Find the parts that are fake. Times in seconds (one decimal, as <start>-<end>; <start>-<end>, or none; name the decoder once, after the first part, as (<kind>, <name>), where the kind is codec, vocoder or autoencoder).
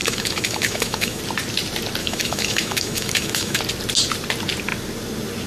0.0-1.2 (autoencoder, DAC-VAE); 2.0-3.6